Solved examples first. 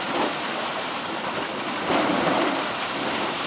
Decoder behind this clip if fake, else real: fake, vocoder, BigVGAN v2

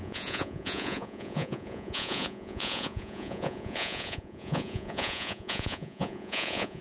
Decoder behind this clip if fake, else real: fake, vocoder, Vocos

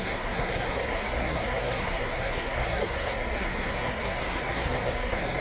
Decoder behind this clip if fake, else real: fake, codec, SNAC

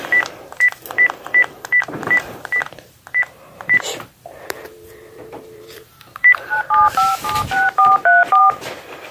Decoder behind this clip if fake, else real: fake, vocoder, BigVGAN v2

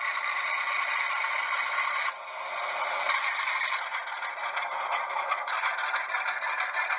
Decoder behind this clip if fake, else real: real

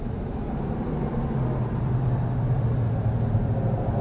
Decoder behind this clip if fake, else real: fake, vocoder, BigVGAN v2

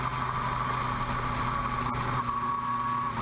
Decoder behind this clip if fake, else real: real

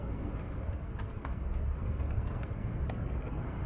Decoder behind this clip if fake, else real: fake, codec, SNAC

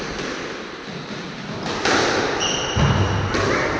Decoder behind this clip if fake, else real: real